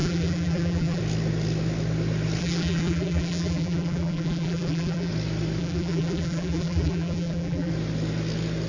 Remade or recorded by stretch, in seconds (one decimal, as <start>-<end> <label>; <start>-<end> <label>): 0.0-1.0 remade; 1.0-2.4 recorded; 2.4-5.1 remade; 5.1-5.6 recorded; 5.6-7.7 remade; 7.7-8.7 recorded